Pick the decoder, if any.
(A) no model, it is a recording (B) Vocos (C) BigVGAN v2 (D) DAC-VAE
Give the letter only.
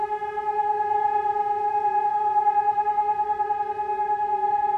A